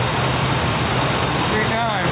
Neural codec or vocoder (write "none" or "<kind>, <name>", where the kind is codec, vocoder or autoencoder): none